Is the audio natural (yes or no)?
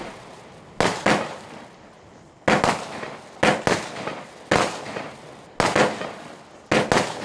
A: yes